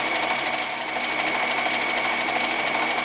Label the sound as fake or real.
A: real